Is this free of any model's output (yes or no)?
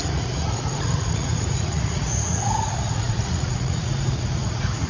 no